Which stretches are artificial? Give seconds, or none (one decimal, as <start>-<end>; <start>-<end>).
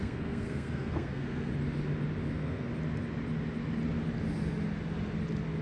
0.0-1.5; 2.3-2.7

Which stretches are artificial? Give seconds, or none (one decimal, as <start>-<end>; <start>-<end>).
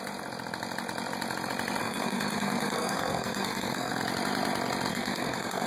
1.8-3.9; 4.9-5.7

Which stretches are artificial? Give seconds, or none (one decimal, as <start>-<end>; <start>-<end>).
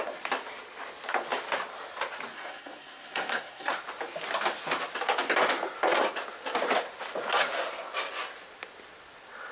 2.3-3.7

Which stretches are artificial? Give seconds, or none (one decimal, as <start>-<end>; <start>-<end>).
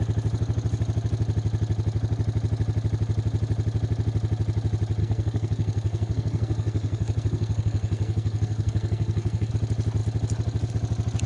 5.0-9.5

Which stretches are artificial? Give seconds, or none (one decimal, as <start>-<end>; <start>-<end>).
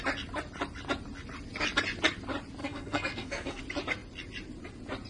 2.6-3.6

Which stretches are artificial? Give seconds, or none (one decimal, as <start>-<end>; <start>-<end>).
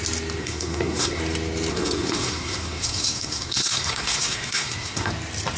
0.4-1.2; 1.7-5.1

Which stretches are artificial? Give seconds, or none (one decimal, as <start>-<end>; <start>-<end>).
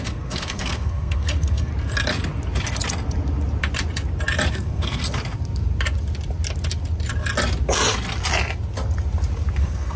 0.0-1.7; 4.5-5.0; 9.6-10.0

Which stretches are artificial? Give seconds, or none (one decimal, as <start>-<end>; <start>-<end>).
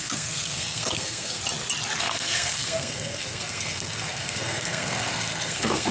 0.0-1.4; 2.0-5.9